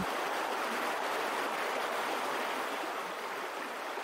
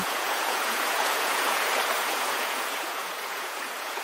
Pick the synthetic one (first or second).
second